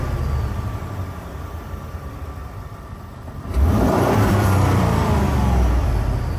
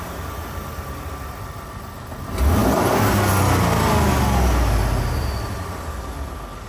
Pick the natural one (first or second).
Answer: second